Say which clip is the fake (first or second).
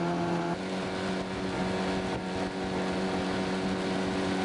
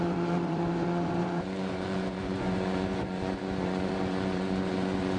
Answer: second